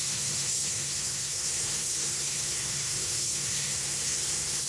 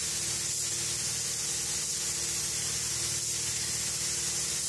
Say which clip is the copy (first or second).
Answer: first